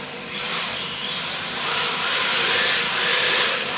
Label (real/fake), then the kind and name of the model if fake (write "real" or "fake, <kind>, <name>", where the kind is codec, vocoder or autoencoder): real